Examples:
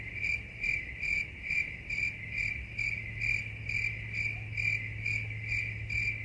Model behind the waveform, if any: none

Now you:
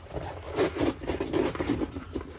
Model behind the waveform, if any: none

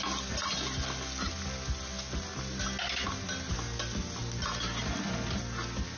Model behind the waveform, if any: none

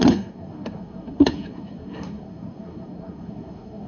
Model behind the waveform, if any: codec, SNAC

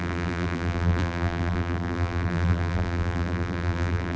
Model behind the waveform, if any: vocoder, BigVGAN v2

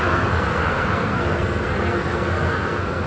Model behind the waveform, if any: codec, SNAC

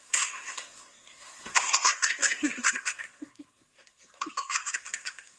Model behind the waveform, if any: codec, SNAC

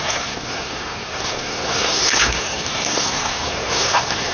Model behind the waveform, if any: codec, SNAC